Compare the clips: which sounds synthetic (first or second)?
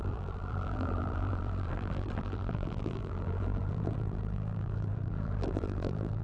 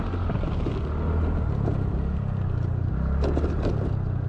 first